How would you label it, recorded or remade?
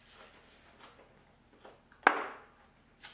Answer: recorded